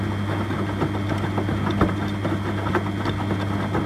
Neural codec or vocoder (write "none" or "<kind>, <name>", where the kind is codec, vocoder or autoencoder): none